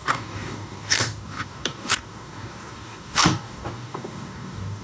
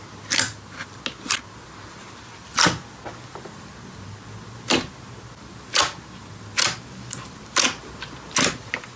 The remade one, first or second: first